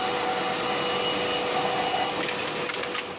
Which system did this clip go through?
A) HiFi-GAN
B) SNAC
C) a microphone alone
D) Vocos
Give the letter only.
C